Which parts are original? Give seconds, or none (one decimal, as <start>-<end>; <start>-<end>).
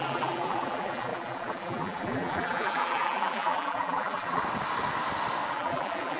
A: 4.4-5.5